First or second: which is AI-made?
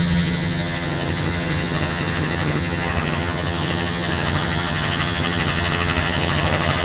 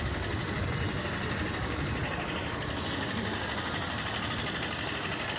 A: first